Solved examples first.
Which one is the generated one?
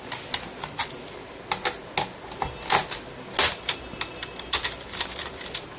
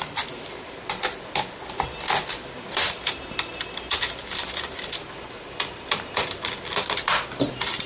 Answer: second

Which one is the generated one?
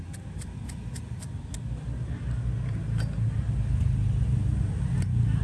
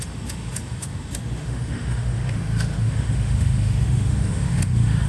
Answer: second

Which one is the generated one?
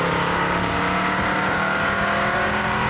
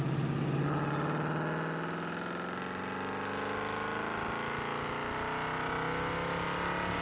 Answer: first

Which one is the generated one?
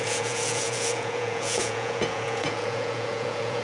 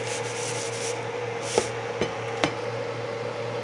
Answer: first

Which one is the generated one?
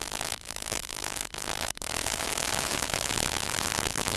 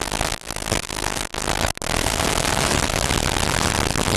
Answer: first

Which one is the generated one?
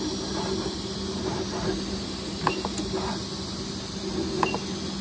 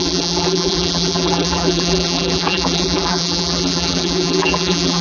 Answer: second